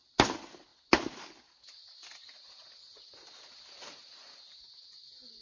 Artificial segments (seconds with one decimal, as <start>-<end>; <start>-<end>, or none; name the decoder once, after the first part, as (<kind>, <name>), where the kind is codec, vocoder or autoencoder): none